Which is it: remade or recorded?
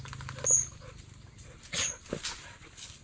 recorded